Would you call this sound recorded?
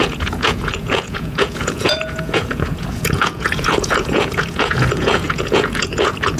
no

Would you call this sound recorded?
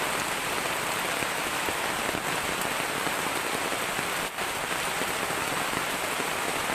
yes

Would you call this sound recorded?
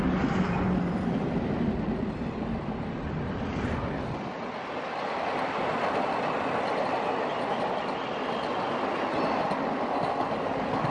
yes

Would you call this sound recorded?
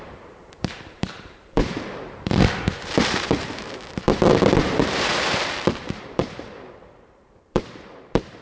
no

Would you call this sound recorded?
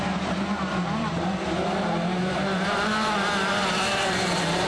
no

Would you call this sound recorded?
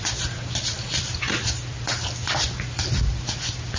yes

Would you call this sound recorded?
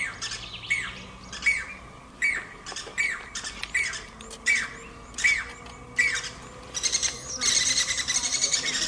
yes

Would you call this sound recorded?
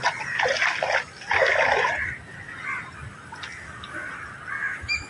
yes